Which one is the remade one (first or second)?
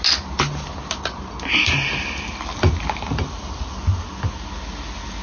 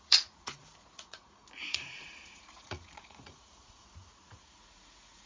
second